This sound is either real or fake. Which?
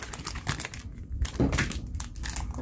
real